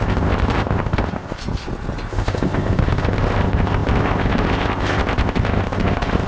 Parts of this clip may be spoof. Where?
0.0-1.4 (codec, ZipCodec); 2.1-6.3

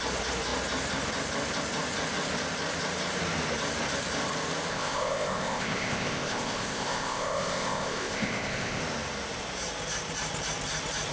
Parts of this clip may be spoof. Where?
4.7-8.8 (codec, ZipCodec)

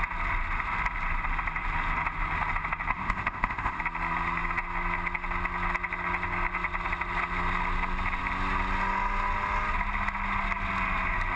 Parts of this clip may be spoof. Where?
2.9-3.8 (codec, ZipCodec)

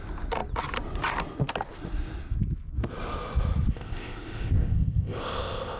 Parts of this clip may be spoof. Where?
3.7-5.8 (codec, ZipCodec)

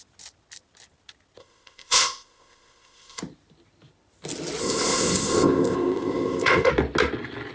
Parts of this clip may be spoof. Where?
1.4-3.2 (codec, ZipCodec); 4.6-6.7